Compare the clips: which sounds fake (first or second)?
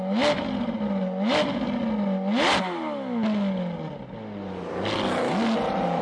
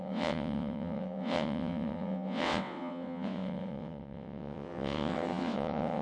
second